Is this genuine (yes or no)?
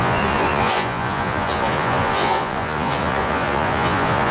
no